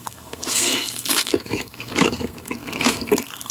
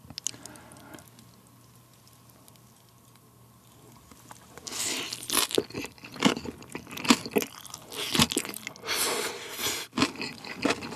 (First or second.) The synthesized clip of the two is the first